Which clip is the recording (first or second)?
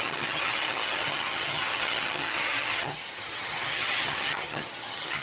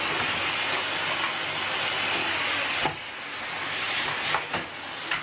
second